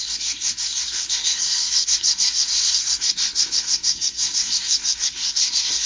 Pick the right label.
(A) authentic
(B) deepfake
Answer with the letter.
B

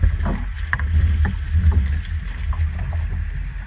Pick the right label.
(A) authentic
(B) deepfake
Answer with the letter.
A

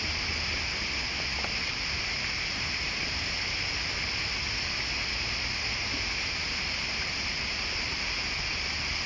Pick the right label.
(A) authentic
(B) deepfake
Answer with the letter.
A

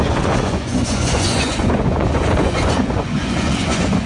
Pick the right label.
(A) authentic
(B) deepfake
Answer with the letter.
B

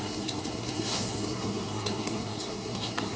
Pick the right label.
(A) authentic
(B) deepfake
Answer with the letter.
B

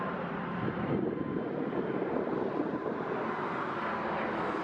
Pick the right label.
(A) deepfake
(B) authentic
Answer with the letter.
B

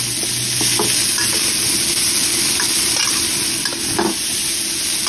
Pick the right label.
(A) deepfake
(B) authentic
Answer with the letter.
B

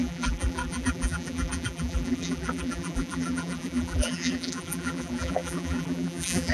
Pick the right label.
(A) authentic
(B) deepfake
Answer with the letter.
B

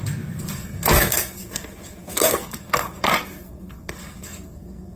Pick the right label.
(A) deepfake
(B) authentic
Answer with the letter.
A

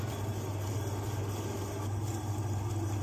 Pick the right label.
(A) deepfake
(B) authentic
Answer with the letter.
B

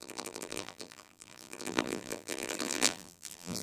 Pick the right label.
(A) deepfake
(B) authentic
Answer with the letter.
A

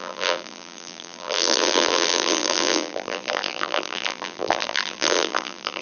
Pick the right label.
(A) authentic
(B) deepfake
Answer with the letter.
B